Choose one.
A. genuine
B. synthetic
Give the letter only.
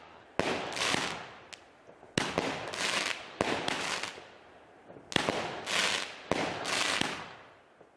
A